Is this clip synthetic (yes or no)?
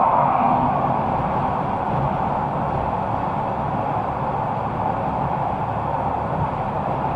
no